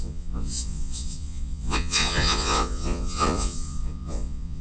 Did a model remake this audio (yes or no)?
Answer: yes